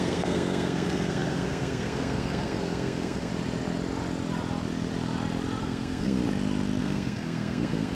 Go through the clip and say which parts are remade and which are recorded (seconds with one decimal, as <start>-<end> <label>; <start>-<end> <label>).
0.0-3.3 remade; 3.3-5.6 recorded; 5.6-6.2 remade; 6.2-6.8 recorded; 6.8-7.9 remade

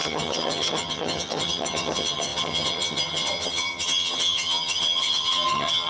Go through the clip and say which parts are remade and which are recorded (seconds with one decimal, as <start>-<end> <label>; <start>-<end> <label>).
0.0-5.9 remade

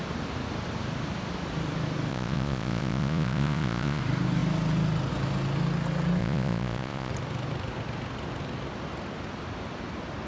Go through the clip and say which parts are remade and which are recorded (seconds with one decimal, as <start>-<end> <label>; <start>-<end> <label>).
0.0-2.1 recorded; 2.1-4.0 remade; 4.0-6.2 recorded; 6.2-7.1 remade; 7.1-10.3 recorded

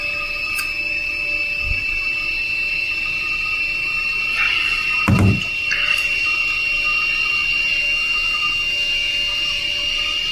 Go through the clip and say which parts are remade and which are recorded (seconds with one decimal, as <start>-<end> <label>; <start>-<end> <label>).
0.0-7.8 recorded; 7.8-9.6 remade; 9.6-10.3 recorded